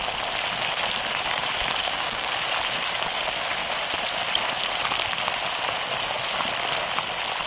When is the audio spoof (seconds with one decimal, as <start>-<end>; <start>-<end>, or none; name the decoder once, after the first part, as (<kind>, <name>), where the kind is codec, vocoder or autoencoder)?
1.8-2.3 (codec, DAC)